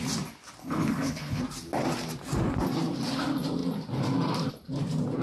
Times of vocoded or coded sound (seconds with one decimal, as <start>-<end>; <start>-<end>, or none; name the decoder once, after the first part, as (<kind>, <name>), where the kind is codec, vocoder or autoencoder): 0.6-1.4 (codec, HILCodec)